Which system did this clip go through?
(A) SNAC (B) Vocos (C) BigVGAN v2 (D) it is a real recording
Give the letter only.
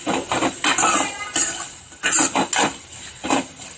D